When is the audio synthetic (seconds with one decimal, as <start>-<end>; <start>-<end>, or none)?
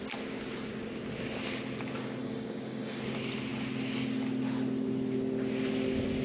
2.2-3.0